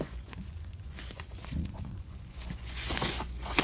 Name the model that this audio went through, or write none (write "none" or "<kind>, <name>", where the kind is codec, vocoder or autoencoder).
vocoder, Vocos